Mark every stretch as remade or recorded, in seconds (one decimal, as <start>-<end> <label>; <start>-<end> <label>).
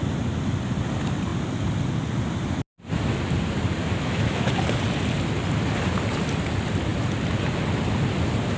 0.0-3.8 recorded; 3.8-4.5 remade; 4.5-8.6 recorded